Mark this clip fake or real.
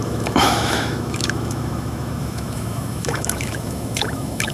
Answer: fake